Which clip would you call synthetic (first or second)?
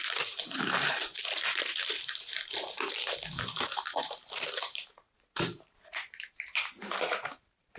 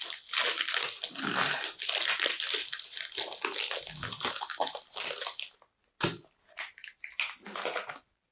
first